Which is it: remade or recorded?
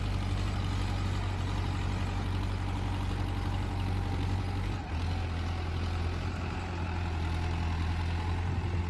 recorded